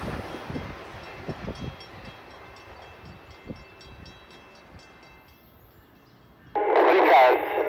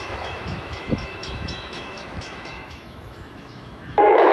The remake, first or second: second